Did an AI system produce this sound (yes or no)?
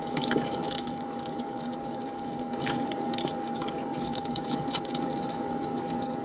yes